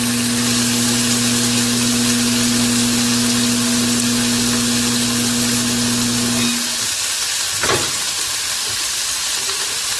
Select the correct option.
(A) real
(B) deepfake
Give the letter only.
A